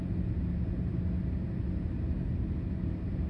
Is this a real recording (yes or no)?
yes